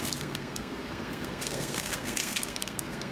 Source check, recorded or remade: remade